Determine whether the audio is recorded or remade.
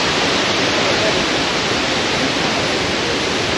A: recorded